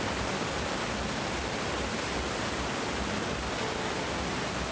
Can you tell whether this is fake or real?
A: real